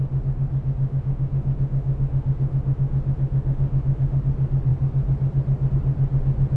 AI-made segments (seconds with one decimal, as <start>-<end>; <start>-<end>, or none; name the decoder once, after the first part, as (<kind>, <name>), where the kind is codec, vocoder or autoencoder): 0.8-4.2 (autoencoder, DAC-VAE)